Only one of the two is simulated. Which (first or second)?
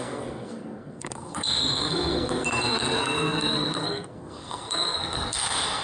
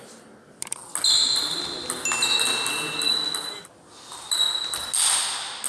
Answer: first